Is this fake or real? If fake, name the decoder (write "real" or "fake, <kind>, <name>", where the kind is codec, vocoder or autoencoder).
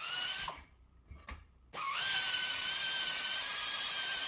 real